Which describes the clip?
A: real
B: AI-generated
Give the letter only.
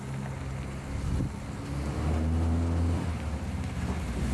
A